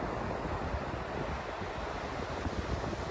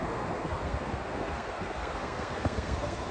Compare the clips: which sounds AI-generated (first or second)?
second